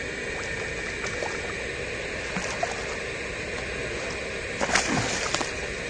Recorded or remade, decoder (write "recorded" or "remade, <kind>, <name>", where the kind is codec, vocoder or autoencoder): recorded